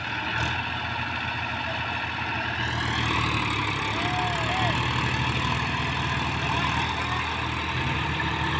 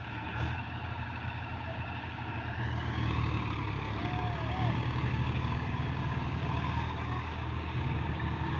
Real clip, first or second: first